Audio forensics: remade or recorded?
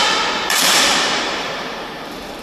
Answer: remade